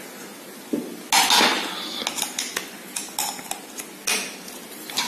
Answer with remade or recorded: recorded